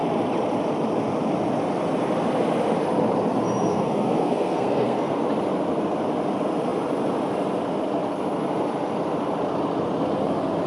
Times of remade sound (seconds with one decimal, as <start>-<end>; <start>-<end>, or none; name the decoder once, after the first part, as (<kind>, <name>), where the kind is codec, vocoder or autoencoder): 3.7-5.2 (codec, SNAC)